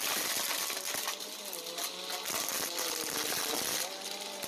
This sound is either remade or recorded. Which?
recorded